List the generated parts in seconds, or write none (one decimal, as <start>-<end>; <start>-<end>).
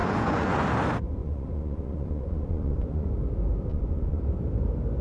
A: 0.0-0.6; 1.2-3.1; 3.7-4.2